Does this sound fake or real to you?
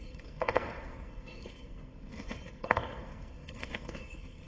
fake